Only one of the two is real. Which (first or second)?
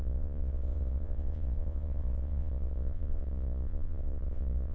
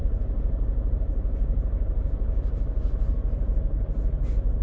second